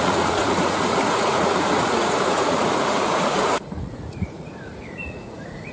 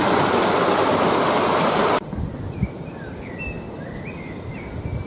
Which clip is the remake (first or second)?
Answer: first